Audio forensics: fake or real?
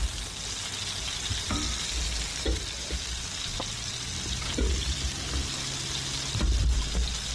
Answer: real